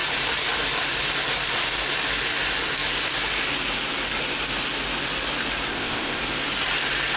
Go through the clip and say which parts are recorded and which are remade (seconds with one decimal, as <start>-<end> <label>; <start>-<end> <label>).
0.0-5.7 recorded; 5.7-6.2 remade; 6.2-7.2 recorded